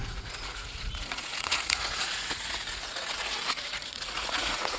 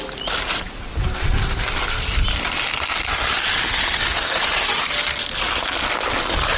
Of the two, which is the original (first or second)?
second